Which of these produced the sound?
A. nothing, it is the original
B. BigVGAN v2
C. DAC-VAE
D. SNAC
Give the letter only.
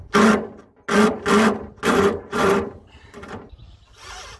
A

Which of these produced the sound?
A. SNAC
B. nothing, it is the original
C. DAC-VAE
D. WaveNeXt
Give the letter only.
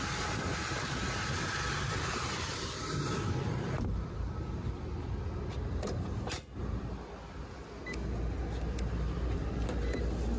B